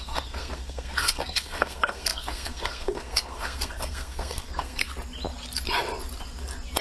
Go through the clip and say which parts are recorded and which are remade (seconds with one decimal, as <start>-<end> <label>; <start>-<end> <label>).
0.0-4.9 remade; 4.9-6.8 recorded